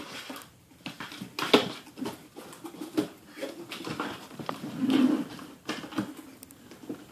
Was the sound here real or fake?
real